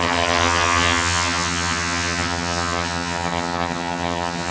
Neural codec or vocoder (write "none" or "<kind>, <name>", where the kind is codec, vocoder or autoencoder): vocoder, HiFi-GAN